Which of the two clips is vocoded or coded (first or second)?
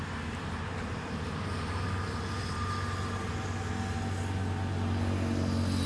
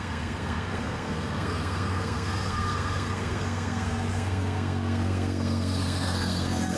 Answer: second